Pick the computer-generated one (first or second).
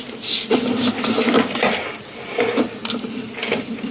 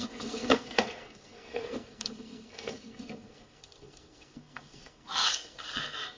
second